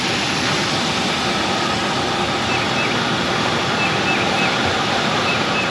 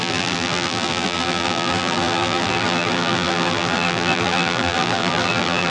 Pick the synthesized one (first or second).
second